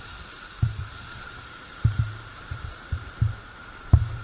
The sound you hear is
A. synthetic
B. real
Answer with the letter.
A